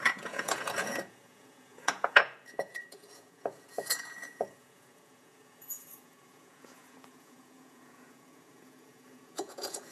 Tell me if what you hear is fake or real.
fake